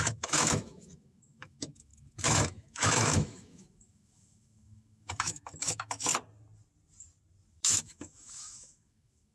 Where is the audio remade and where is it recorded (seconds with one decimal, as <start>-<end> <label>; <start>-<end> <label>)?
0.0-6.1 remade; 6.1-7.5 recorded; 7.5-9.3 remade

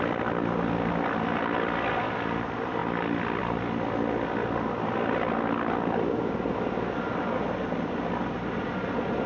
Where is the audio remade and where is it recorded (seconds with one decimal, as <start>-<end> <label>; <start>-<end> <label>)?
0.0-9.3 recorded

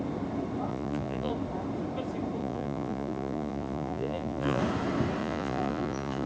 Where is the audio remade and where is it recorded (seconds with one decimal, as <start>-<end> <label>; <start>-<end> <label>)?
0.0-0.7 recorded; 0.7-1.3 remade; 1.3-2.4 recorded; 2.4-4.6 remade; 4.6-5.2 recorded; 5.2-6.3 remade

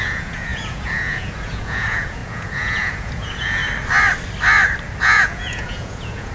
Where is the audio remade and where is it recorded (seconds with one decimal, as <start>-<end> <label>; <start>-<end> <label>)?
0.0-3.6 remade; 3.6-5.0 recorded; 5.0-6.3 remade

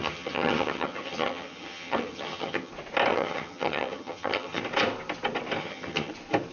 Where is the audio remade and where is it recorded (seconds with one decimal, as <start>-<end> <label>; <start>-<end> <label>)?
0.0-2.7 remade; 2.7-3.1 recorded; 3.1-4.6 remade; 4.6-5.6 recorded; 5.6-6.1 remade; 6.1-6.5 recorded

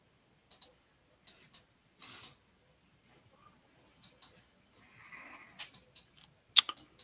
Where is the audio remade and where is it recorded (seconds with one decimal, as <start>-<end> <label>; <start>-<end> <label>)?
0.0-7.0 recorded

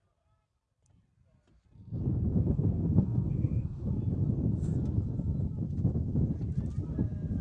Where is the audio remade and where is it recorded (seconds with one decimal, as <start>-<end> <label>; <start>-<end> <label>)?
0.0-2.3 recorded; 2.3-3.9 remade; 3.9-7.4 recorded